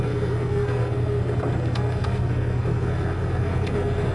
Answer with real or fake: fake